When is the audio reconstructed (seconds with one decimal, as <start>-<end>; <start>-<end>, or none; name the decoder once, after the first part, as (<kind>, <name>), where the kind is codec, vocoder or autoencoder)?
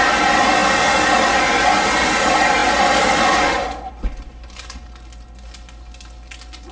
none